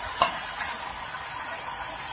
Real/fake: real